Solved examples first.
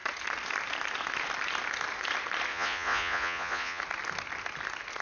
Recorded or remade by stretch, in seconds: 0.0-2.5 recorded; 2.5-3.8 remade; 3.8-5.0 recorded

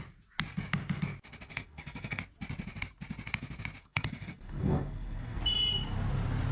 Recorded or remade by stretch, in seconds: 0.0-1.5 recorded; 1.5-2.2 remade; 2.2-3.8 recorded; 3.8-5.4 remade; 5.4-6.5 recorded

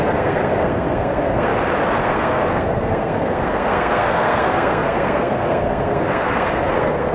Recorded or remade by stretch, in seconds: 0.0-1.5 remade; 1.5-2.0 recorded; 2.0-7.1 remade

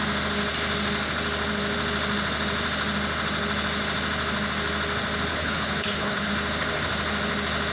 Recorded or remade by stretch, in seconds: 0.0-5.3 recorded; 5.3-6.3 remade; 6.3-7.7 recorded